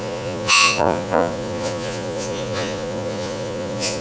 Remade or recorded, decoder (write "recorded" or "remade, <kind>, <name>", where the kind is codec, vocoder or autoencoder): remade, vocoder, Vocos